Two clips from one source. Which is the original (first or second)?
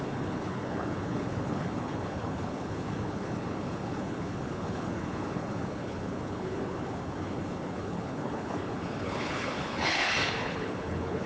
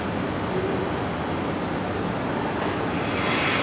second